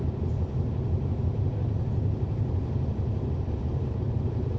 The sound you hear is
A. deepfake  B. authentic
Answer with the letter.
B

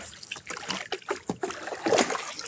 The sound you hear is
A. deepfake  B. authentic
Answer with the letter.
B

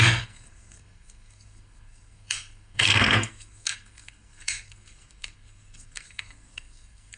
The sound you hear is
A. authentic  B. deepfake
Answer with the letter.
B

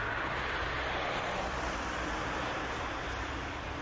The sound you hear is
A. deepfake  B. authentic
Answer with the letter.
B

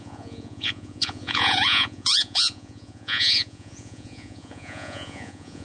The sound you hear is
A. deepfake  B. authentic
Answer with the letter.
A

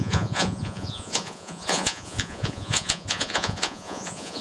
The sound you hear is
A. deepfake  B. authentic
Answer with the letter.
A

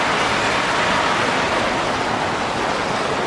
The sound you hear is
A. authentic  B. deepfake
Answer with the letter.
A